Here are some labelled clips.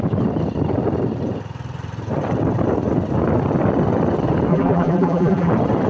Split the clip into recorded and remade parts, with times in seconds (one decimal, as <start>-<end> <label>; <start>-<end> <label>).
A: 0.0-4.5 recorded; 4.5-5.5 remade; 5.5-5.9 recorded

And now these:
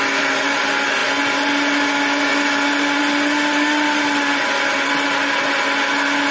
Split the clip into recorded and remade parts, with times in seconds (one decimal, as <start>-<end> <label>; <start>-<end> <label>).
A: 0.0-6.3 recorded

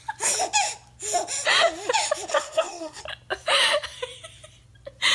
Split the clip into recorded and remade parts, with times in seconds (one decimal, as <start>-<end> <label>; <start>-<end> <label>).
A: 0.0-2.3 recorded; 2.3-3.0 remade; 3.0-5.1 recorded